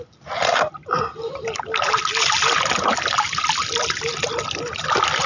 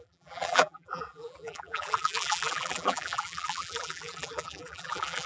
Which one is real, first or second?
first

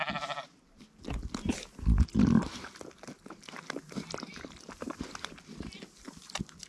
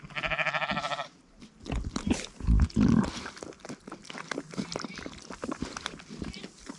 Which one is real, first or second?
first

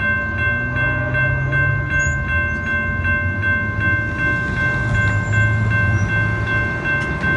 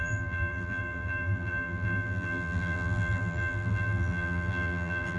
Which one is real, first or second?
first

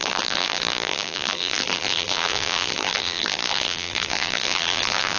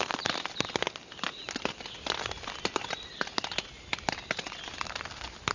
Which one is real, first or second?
second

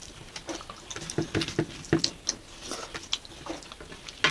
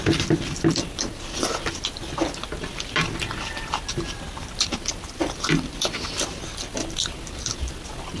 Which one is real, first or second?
first